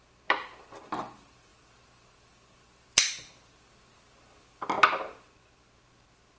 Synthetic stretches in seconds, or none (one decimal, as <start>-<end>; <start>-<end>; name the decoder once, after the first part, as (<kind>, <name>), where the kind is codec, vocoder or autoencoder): none